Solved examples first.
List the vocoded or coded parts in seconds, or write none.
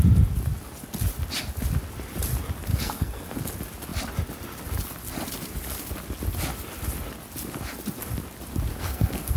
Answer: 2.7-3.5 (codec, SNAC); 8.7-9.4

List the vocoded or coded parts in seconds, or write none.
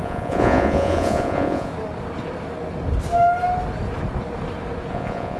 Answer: 0.0-1.7 (vocoder, Vocos); 4.9-5.4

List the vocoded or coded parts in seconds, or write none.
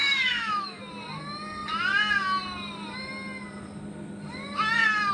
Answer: 0.0-0.8 (autoencoder, DAC-VAE)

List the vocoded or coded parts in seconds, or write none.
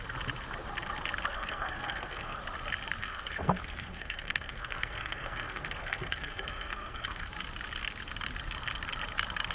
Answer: 1.3-2.4 (codec, SNAC); 3.0-7.3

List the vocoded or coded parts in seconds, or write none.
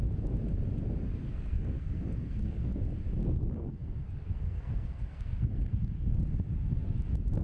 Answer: 1.3-2.8 (codec, SNAC); 3.2-6.2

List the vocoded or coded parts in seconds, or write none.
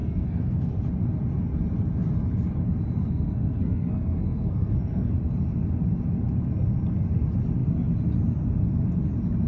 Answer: 0.0-0.7 (codec, SNAC); 3.0-5.1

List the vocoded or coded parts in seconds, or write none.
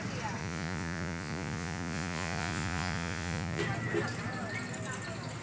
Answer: 0.4-3.6 (vocoder, Vocos)